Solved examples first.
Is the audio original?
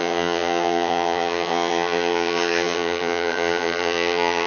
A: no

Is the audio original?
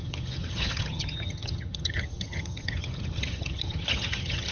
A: no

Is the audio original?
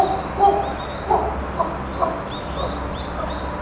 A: yes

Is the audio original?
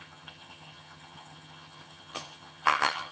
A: no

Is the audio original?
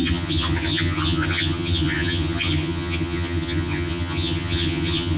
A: no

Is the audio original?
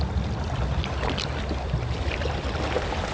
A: yes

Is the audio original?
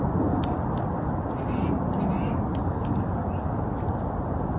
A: yes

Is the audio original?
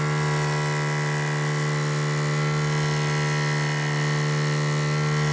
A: yes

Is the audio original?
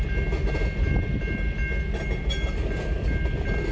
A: yes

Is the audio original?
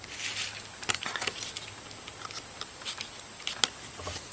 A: yes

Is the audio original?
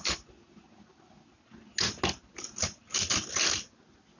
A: yes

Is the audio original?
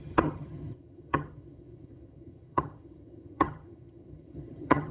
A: no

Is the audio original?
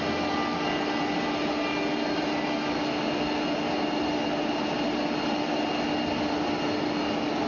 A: yes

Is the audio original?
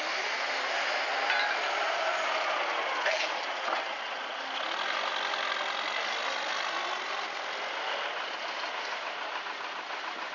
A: yes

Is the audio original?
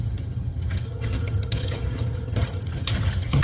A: no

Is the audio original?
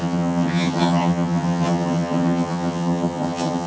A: no